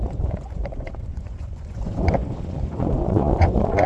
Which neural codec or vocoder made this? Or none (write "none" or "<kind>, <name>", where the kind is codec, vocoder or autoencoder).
vocoder, Vocos